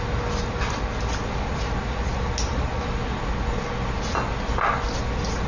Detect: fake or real real